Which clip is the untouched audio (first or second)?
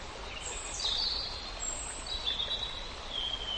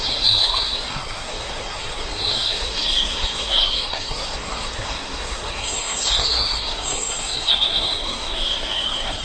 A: first